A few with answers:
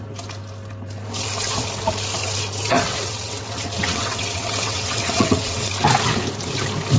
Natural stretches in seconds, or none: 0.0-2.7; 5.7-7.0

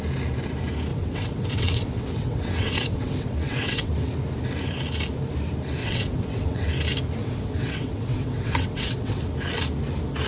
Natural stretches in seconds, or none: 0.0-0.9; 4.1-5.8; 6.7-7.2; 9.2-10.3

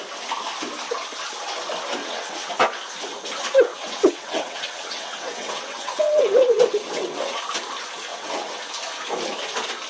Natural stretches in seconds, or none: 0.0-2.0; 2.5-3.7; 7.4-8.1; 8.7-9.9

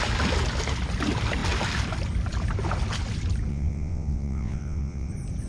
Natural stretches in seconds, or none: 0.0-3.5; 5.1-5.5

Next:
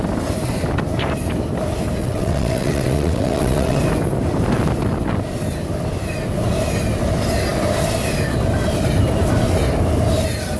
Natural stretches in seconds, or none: 0.0-2.0; 3.8-10.6